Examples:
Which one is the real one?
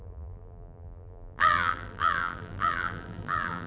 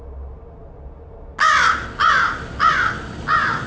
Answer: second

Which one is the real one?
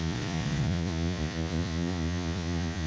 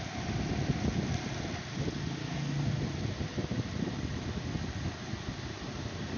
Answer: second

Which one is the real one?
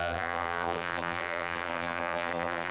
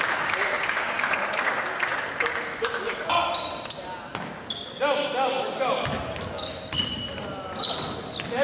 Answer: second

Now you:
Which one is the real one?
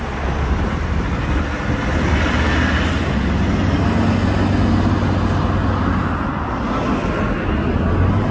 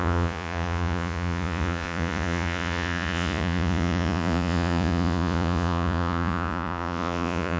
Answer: first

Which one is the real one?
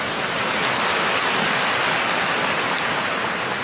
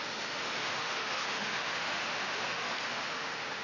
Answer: first